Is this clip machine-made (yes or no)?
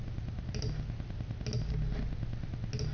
no